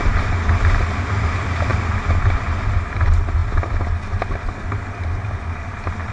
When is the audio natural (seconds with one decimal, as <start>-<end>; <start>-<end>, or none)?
0.0-6.1